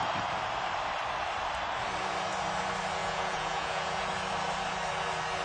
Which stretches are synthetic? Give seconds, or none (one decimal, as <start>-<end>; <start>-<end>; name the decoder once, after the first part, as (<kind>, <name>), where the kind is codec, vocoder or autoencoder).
3.0-4.0 (vocoder, Vocos)